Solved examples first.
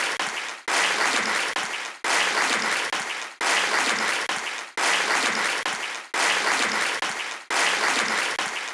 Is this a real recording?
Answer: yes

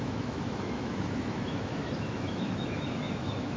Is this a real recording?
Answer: no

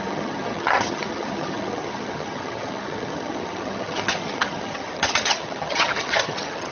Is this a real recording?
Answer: no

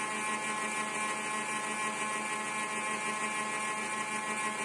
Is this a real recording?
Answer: yes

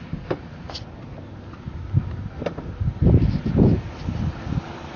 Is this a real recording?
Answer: yes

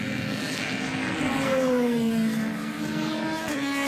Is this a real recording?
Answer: no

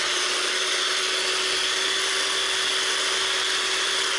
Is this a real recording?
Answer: yes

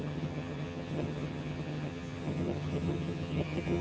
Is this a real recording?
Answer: no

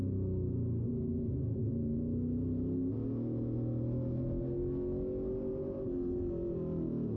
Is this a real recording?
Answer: yes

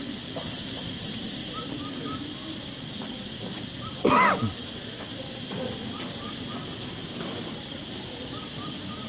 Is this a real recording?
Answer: no